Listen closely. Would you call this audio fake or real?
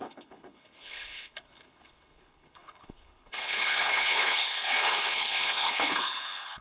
fake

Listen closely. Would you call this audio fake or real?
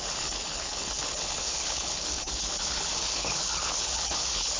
fake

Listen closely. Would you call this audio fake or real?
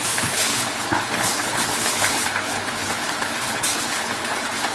fake